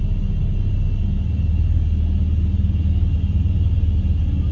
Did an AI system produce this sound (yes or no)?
no